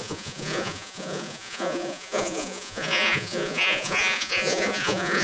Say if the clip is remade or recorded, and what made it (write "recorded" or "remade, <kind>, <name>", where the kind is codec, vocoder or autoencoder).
remade, vocoder, Vocos